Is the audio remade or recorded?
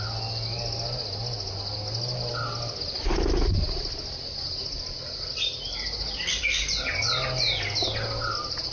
recorded